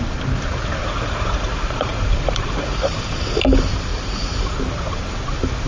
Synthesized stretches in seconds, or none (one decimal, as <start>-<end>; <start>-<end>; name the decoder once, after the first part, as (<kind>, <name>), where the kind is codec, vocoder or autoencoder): 0.8-2.8 (vocoder, Vocos); 3.9-4.5